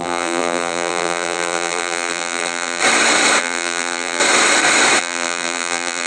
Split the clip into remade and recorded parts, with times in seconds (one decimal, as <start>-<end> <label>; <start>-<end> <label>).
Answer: 0.0-2.8 remade; 2.8-3.4 recorded; 3.4-4.2 remade; 4.2-5.0 recorded; 5.0-6.1 remade